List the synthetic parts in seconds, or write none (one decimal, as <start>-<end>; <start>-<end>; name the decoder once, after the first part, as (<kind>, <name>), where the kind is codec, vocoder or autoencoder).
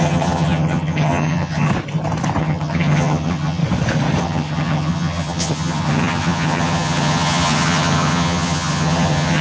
0.0-1.7 (vocoder, HiFi-GAN); 2.4-3.6; 4.2-9.4